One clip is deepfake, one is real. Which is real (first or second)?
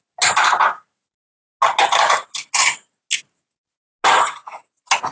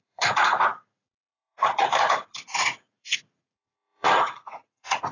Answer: first